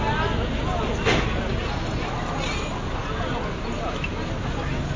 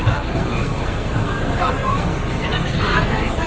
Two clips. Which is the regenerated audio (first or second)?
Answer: second